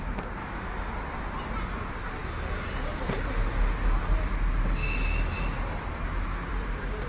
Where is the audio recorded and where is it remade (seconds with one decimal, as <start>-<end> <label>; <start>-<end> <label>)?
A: 0.0-0.4 recorded; 0.4-0.9 remade; 0.9-7.1 recorded